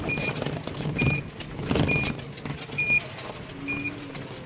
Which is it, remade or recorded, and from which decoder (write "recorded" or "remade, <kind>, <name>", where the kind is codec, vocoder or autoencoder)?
recorded